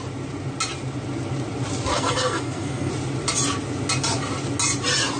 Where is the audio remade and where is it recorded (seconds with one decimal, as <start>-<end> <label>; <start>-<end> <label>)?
0.0-1.9 recorded; 1.9-2.9 remade; 2.9-5.2 recorded